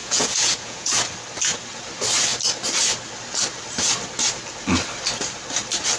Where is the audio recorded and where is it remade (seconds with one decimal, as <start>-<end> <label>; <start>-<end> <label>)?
0.0-0.9 remade; 0.9-6.0 recorded